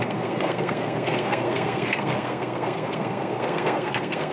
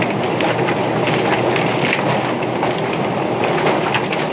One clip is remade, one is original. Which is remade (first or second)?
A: first